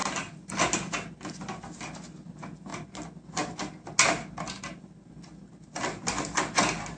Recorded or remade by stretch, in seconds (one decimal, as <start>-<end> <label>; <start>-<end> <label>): 0.0-7.0 recorded